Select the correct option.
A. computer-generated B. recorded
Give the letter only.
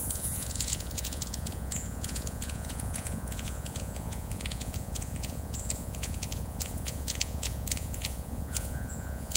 A